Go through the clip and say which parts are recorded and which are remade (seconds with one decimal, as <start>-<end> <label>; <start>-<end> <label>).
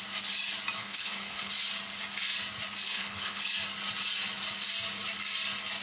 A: 0.0-0.8 recorded; 0.8-1.5 remade; 1.5-2.8 recorded; 2.8-3.4 remade; 3.4-5.8 recorded